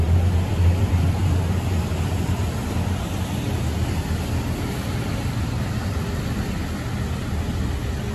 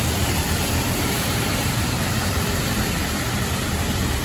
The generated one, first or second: second